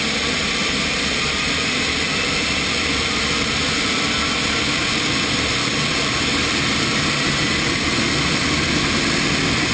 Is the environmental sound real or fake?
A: real